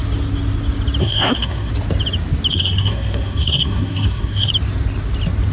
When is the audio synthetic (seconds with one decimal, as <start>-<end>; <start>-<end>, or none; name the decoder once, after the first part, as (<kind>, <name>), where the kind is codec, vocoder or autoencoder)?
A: 1.0-1.7 (codec, SNAC); 2.5-4.5